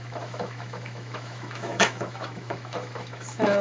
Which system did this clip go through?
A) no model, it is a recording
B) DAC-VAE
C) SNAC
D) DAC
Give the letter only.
B